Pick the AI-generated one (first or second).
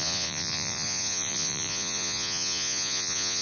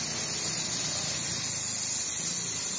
first